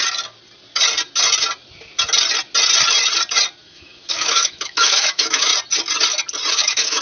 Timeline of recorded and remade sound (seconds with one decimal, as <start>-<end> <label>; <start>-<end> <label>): 0.0-3.6 recorded; 3.6-5.5 remade; 5.5-6.5 recorded; 6.5-7.0 remade